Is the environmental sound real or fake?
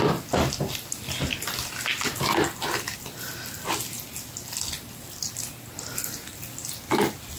real